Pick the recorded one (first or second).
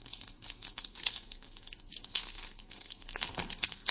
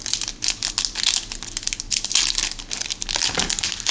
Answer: second